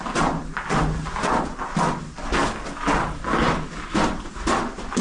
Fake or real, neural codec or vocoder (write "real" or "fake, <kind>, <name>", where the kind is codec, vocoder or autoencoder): real